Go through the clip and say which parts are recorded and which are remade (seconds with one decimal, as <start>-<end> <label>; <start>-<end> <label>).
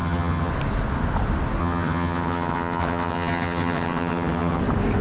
0.0-0.5 remade; 0.5-1.6 recorded; 1.6-4.6 remade; 4.6-5.0 recorded